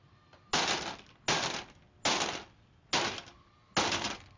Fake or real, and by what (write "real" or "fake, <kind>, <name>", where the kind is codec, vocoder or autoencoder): real